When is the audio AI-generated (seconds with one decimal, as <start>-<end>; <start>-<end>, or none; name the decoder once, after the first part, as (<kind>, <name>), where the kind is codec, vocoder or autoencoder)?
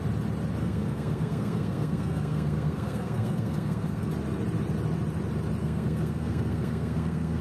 0.6-4.1 (codec, SNAC); 5.6-7.4